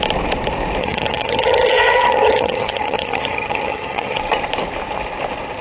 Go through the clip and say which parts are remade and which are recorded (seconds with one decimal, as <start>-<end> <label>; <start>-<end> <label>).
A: 0.0-0.8 recorded; 0.8-4.2 remade; 4.2-5.6 recorded

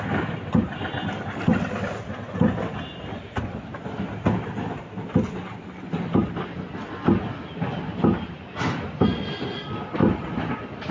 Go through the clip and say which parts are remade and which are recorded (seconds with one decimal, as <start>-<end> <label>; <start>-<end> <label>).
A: 0.0-10.9 recorded

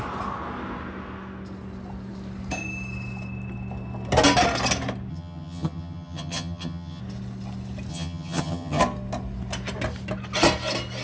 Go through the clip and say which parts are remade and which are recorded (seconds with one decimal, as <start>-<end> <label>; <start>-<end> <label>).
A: 0.0-5.1 recorded; 5.1-7.0 remade; 7.0-7.9 recorded; 7.9-8.8 remade; 8.8-11.0 recorded

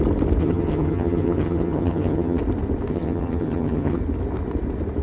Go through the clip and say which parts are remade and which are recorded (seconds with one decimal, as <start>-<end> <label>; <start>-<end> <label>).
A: 0.0-0.4 recorded; 0.4-2.4 remade; 2.4-2.9 recorded; 2.9-4.0 remade; 4.0-5.0 recorded

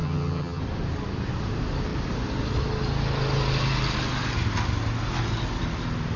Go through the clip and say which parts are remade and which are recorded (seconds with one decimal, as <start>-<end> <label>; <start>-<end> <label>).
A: 0.0-0.6 remade; 0.6-6.2 recorded

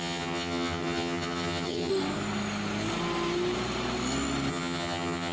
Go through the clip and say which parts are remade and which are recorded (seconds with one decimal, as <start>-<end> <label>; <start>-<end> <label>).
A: 0.0-1.9 remade; 1.9-4.5 recorded; 4.5-5.3 remade